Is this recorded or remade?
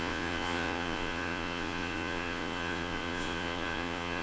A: remade